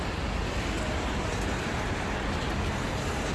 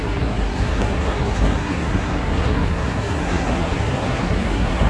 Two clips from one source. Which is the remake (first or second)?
second